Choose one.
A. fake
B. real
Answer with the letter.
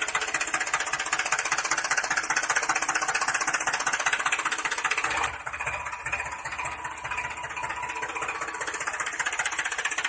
B